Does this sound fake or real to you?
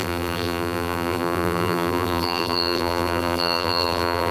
fake